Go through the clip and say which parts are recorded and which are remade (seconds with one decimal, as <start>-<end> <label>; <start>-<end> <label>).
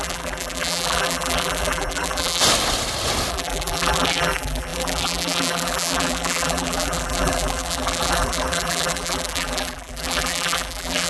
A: 0.0-2.4 remade; 2.4-3.3 recorded; 3.3-11.1 remade